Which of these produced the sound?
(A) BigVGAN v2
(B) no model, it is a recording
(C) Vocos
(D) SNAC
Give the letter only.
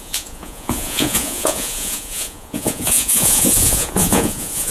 C